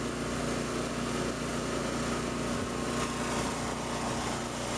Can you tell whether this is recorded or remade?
recorded